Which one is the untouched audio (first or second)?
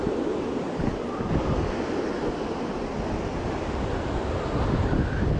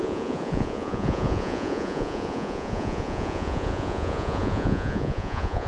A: first